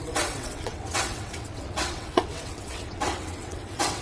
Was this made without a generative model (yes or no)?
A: no